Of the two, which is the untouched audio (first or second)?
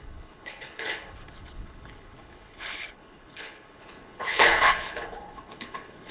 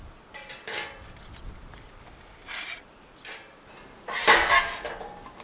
second